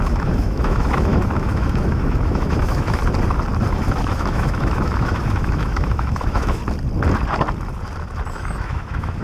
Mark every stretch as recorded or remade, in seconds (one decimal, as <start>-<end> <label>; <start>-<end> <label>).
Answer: 0.0-3.0 remade; 3.0-3.7 recorded; 3.7-6.6 remade; 6.6-8.3 recorded; 8.3-9.2 remade